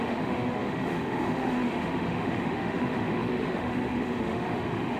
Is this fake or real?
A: fake